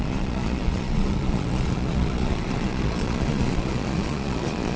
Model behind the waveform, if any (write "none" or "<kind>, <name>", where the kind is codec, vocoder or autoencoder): vocoder, Vocos